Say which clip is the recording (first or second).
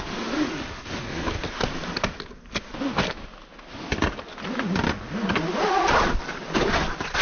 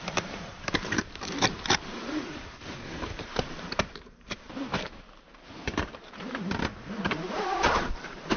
first